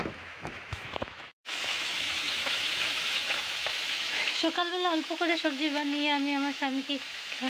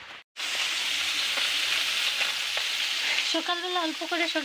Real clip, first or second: second